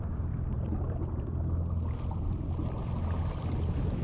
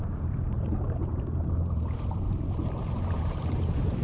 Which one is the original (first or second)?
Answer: first